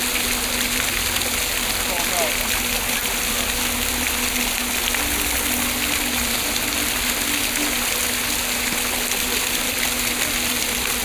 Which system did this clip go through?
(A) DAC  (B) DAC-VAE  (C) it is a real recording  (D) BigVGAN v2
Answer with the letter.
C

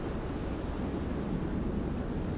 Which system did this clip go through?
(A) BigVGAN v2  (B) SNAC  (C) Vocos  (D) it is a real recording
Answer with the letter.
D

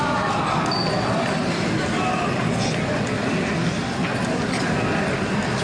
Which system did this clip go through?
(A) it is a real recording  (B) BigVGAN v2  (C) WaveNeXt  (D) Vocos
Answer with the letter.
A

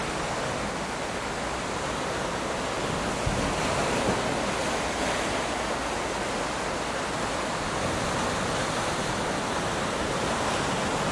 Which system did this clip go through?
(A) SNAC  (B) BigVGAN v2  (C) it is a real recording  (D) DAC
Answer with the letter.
C